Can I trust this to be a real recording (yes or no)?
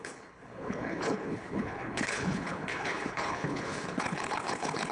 no